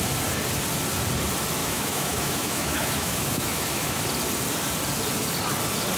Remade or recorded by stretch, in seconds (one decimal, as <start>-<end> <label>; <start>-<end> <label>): 0.0-1.6 recorded; 1.6-4.0 remade; 4.0-6.0 recorded